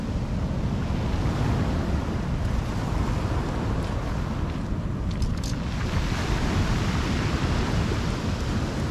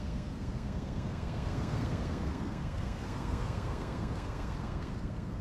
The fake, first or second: second